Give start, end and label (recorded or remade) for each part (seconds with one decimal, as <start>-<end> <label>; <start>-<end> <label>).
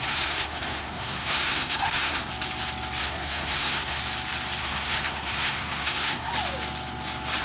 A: 0.0-2.3 remade; 2.3-3.0 recorded; 3.0-4.0 remade; 4.0-4.6 recorded; 4.6-6.3 remade; 6.3-7.4 recorded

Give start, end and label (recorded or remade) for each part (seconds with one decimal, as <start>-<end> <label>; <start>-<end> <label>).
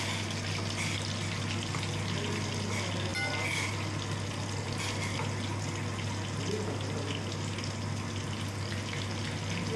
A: 0.0-9.8 recorded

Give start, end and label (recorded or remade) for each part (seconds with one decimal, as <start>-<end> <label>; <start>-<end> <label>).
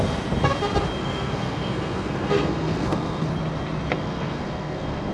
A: 0.0-1.0 recorded; 1.0-3.3 remade; 3.3-3.9 recorded; 3.9-5.1 remade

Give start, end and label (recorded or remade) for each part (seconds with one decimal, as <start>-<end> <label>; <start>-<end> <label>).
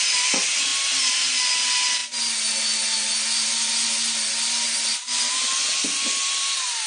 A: 0.0-6.9 recorded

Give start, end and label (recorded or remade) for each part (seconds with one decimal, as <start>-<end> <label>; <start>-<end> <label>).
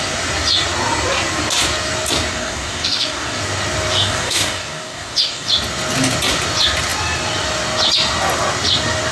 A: 0.0-2.3 recorded; 2.3-3.4 remade; 3.4-3.9 recorded; 3.9-5.5 remade; 5.5-9.1 recorded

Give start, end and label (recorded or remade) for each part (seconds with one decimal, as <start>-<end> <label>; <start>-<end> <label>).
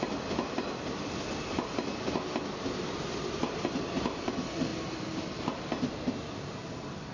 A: 0.0-7.1 recorded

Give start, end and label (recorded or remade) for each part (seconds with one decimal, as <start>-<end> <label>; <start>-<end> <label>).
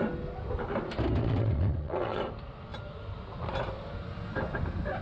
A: 0.0-1.2 recorded; 1.2-2.2 remade; 2.2-5.0 recorded